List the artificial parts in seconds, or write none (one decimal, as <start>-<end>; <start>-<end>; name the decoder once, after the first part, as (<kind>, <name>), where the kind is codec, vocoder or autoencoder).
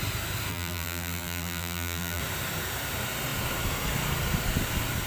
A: 0.5-2.2 (vocoder, BigVGAN v2)